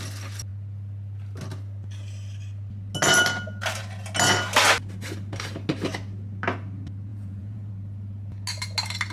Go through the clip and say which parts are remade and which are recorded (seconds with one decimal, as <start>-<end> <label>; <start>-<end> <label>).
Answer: 0.0-7.1 recorded; 7.1-7.7 remade; 7.7-9.1 recorded